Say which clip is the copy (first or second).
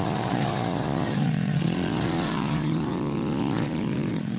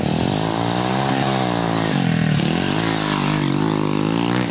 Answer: first